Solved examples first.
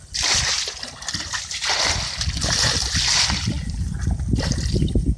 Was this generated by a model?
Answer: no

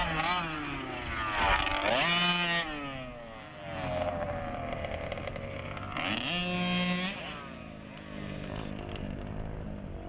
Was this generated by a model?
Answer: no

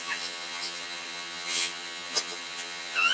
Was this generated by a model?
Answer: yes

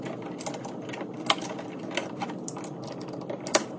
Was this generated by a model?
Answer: no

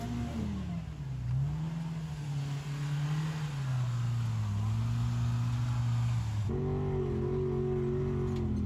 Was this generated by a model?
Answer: no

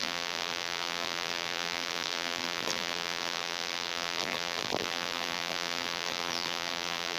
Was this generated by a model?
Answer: yes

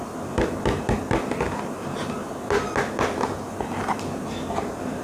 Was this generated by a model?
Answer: no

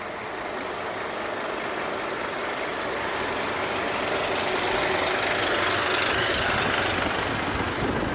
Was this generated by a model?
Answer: no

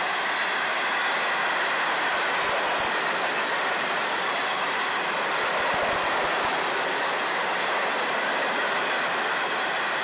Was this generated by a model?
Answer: no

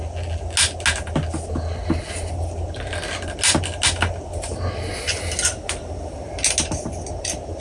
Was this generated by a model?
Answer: no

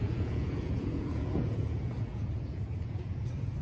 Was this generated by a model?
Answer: yes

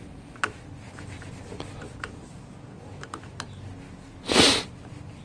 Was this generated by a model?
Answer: no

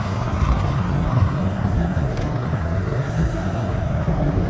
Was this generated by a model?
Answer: yes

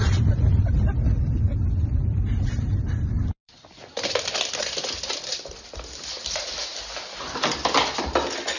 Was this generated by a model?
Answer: yes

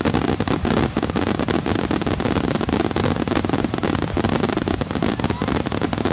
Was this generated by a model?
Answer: no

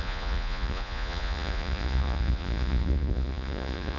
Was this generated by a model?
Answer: yes